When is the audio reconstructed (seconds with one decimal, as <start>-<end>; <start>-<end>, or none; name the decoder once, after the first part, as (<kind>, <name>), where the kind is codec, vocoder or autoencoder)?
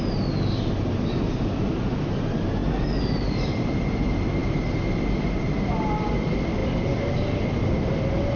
none